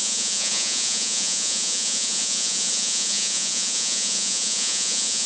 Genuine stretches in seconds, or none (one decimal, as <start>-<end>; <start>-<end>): none